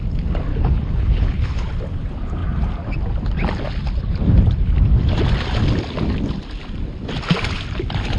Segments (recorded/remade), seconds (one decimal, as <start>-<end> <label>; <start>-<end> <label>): 0.0-0.5 recorded; 0.5-1.7 remade; 1.7-8.2 recorded